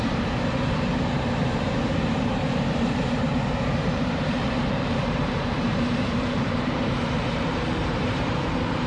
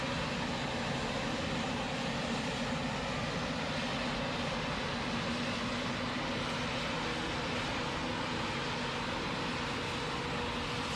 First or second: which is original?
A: second